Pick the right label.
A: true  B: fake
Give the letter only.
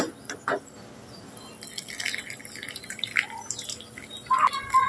A